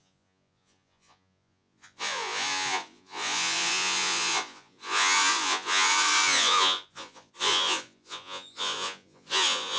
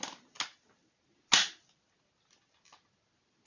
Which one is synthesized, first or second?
first